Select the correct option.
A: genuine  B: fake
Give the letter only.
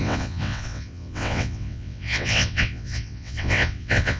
B